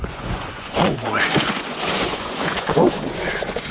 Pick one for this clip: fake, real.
fake